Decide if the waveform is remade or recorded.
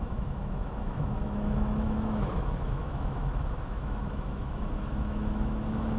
remade